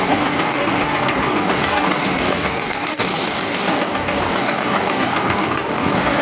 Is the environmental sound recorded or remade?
remade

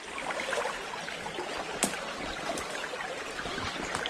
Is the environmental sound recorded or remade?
recorded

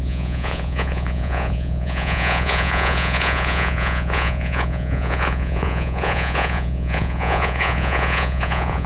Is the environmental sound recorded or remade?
remade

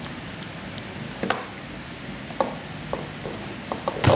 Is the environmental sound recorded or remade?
recorded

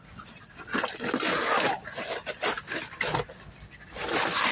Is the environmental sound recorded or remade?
recorded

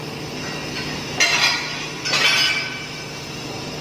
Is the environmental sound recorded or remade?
recorded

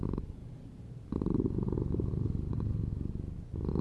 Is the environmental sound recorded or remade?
recorded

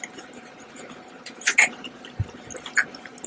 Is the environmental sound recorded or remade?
recorded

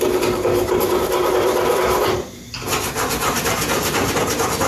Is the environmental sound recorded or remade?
remade